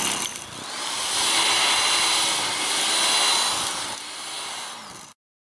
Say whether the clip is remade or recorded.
recorded